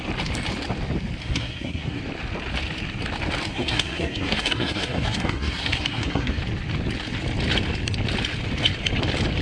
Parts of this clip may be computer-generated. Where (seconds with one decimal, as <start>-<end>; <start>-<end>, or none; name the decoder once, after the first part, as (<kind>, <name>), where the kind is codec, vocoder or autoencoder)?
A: 1.2-2.0 (codec, SNAC); 3.5-6.4